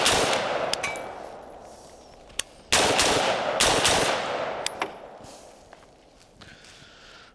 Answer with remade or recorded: recorded